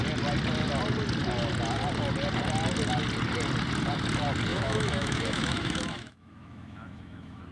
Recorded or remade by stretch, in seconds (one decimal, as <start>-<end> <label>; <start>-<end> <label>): 0.0-4.5 recorded; 4.5-7.5 remade